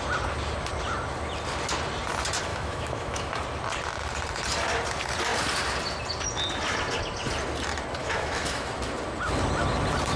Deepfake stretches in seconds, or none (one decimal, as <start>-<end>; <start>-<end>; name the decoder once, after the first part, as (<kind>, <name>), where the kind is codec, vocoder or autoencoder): 2.5-3.3 (autoencoder, DAC-VAE); 8.0-8.7